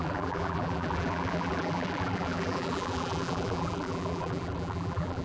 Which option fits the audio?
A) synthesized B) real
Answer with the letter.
A